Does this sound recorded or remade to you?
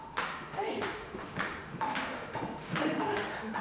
remade